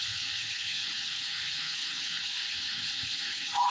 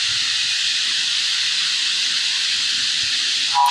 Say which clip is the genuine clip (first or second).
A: second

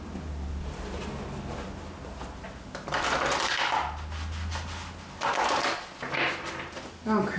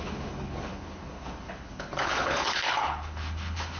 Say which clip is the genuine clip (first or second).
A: first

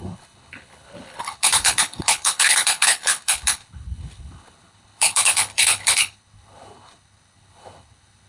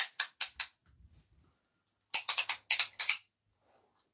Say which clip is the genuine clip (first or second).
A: second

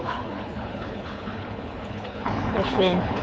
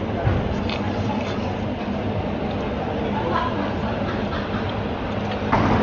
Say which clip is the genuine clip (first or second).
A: second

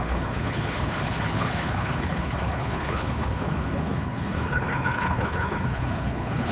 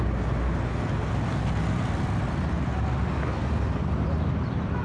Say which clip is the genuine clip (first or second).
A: second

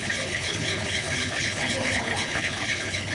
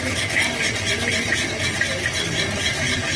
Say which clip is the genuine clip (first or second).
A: second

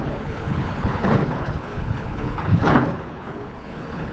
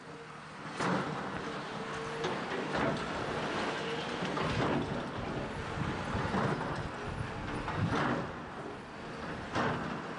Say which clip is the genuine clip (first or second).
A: second